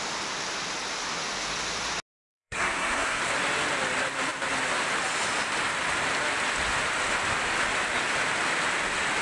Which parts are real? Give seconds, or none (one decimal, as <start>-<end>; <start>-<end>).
0.0-2.3; 3.2-9.2